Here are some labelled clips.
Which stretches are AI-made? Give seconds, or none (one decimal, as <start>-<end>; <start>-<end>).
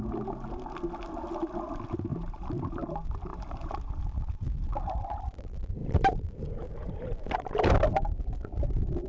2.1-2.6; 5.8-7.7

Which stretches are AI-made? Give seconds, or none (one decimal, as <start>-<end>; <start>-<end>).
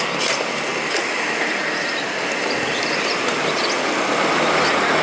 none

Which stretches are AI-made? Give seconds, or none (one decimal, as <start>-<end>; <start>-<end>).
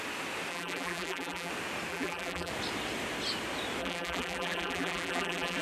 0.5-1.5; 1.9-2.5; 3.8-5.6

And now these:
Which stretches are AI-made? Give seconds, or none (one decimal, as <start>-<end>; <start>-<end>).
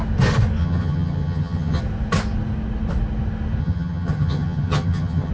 0.6-1.8; 3.6-5.3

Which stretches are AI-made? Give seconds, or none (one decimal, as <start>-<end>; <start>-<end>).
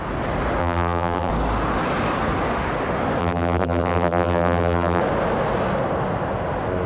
0.6-1.3; 3.2-5.0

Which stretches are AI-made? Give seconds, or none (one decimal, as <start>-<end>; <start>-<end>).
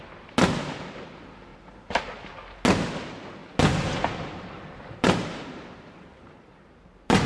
1.5-2.0; 3.7-7.3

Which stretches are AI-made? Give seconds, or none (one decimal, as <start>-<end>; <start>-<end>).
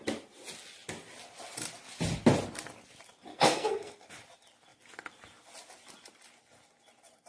3.3-4.1